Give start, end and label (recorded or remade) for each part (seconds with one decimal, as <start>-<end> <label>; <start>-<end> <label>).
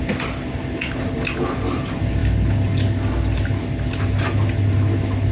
0.0-5.3 recorded